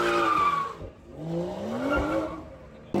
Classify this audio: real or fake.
real